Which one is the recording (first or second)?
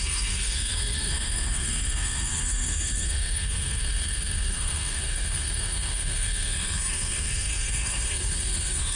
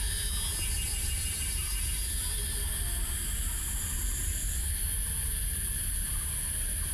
second